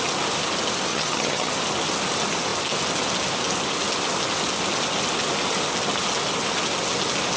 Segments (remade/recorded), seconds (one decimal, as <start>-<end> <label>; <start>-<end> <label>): 0.0-0.9 recorded; 0.9-1.5 remade; 1.5-7.4 recorded